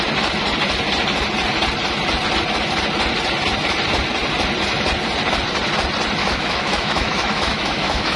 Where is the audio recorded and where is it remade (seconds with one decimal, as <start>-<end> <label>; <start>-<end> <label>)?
0.0-6.2 recorded; 6.2-8.2 remade